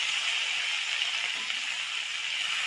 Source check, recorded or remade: recorded